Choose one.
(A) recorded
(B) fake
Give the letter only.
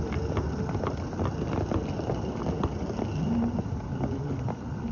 A